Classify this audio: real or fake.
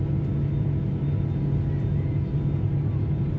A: real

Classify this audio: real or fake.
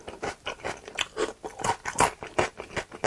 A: real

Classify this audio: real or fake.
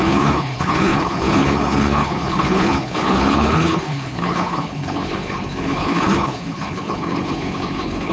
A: fake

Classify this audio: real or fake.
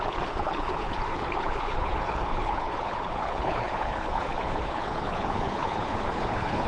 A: fake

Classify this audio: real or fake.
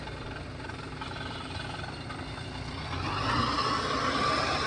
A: real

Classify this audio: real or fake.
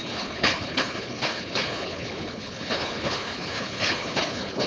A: fake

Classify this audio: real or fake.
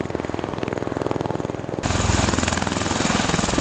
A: real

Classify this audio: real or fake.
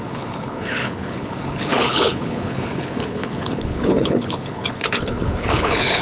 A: fake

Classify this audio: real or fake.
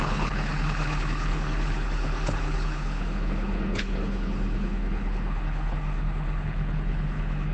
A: fake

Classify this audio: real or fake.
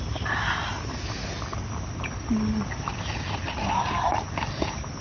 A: real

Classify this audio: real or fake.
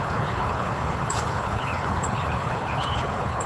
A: fake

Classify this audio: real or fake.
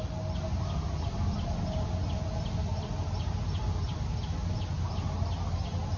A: real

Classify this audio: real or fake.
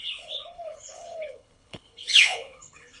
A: fake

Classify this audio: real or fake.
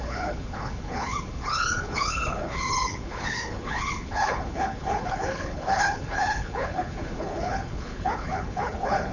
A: fake